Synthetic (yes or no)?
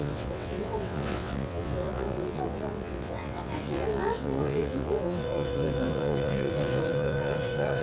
yes